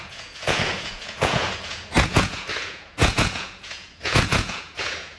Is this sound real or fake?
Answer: fake